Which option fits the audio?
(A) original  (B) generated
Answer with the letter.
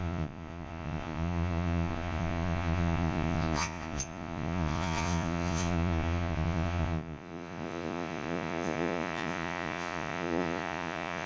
B